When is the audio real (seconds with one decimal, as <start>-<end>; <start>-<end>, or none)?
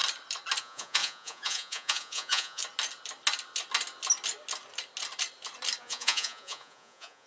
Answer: 0.0-0.6; 2.6-5.8